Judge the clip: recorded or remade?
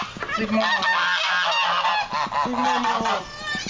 recorded